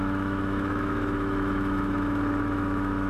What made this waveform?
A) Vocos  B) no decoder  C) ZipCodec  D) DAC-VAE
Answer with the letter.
D